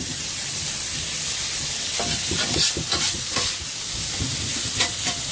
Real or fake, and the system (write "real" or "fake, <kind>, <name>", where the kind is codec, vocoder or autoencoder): fake, vocoder, BigVGAN v2